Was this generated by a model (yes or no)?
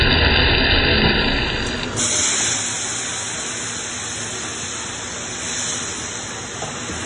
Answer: no